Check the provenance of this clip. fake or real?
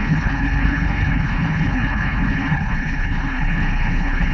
fake